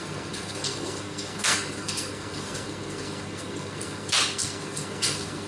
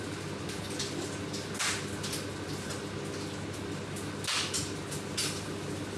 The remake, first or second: first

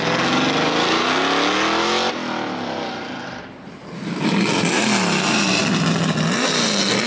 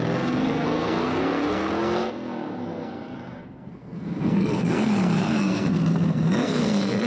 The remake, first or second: second